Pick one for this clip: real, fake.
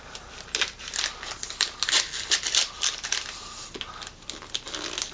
real